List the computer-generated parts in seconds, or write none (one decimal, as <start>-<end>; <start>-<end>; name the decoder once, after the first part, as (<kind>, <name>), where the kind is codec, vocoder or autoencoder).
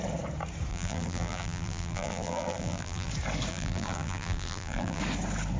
0.7-3.1 (vocoder, BigVGAN v2); 3.5-5.0